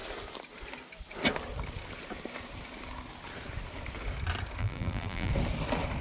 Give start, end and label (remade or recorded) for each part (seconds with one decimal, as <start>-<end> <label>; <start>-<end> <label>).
0.0-4.6 recorded; 4.6-5.3 remade; 5.3-6.0 recorded